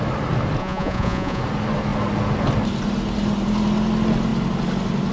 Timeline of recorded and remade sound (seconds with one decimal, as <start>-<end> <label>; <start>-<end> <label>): 0.0-0.6 recorded; 0.6-1.4 remade; 1.4-5.1 recorded